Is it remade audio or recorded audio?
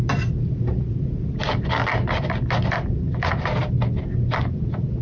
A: recorded